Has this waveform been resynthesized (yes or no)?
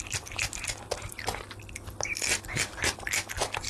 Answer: no